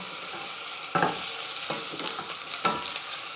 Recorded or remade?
recorded